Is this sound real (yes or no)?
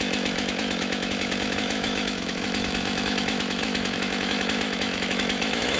no